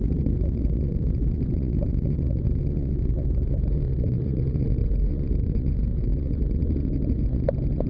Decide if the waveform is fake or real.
fake